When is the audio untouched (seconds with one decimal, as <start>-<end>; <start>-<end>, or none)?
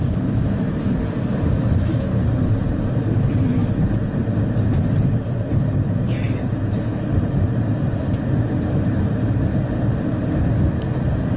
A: 3.6-4.1; 9.5-11.4